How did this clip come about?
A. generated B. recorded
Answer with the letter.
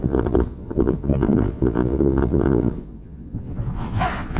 A